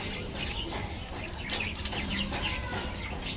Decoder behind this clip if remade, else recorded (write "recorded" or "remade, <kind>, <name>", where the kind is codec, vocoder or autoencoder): recorded